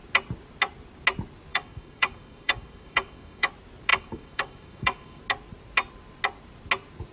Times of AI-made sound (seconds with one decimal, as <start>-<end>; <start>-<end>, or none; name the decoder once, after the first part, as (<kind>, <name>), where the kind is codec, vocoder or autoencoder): 1.5-3.5 (codec, DAC); 3.9-5.2